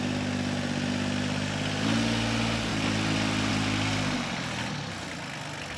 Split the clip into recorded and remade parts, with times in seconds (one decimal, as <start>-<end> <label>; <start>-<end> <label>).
0.0-5.8 recorded